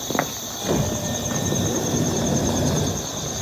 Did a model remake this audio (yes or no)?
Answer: yes